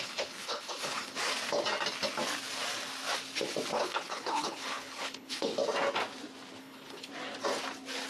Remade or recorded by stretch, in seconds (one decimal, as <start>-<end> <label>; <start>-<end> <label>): 0.0-1.3 remade; 1.3-3.7 recorded; 3.7-5.5 remade; 5.5-6.6 recorded; 6.6-7.1 remade; 7.1-8.1 recorded